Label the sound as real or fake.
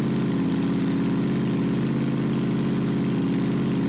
real